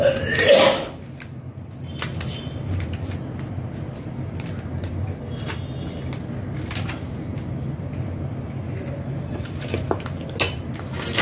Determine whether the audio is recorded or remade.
recorded